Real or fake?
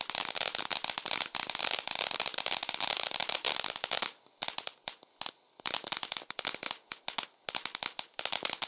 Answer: real